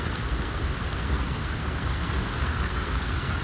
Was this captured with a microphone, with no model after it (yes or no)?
no